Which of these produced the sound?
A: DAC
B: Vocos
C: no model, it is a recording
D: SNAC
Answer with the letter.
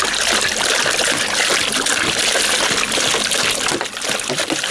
C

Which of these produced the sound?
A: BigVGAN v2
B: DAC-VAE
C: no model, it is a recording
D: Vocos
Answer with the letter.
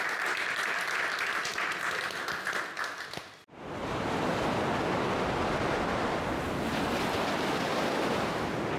C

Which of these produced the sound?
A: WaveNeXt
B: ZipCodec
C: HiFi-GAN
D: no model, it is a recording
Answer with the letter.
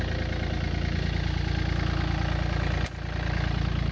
D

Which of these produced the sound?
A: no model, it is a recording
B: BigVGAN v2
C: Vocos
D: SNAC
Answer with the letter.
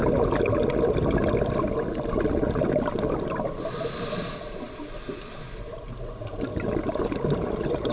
A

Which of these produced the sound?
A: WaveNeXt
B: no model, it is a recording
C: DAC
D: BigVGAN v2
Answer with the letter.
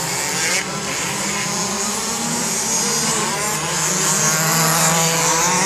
B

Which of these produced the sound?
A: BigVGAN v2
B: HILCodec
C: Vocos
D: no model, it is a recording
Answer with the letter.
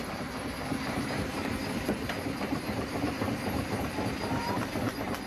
A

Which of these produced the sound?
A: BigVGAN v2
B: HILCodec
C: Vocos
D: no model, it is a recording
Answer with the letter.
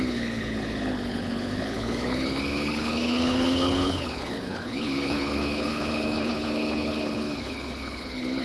B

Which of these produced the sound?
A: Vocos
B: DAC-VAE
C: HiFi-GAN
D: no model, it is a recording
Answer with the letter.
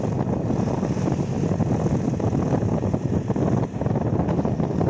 D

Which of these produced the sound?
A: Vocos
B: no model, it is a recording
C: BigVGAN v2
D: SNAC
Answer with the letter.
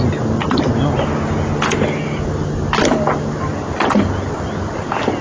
B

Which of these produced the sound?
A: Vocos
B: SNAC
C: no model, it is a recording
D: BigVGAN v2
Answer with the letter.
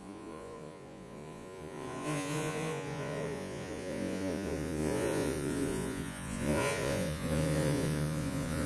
A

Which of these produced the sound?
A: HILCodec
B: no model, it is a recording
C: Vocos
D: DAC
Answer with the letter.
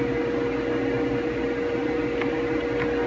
B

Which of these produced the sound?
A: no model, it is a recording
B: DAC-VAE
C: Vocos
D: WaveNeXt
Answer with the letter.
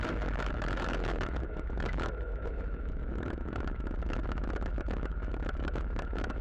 B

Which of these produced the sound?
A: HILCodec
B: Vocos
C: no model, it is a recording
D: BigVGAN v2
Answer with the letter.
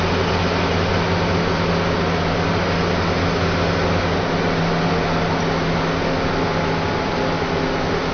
C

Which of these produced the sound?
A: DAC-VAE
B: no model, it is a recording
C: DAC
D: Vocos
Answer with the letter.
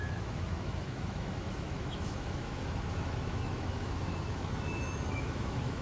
A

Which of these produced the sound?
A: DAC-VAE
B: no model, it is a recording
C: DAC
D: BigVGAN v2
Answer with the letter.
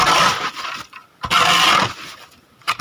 B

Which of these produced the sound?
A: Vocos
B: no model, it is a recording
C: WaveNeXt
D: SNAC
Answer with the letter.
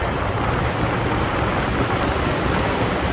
B